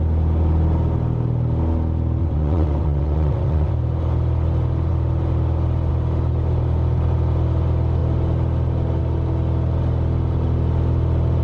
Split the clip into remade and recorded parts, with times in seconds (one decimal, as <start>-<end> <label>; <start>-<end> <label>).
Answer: 0.0-2.2 recorded; 2.2-3.7 remade; 3.7-11.4 recorded